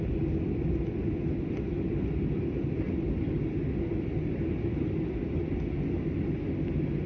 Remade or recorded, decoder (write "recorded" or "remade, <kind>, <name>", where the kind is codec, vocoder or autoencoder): recorded